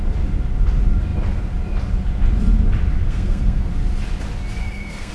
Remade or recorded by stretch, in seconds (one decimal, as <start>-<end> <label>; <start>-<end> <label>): 0.0-3.0 recorded; 3.0-3.7 remade; 3.7-4.6 recorded; 4.6-5.1 remade